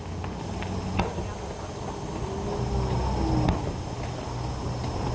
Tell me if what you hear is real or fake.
real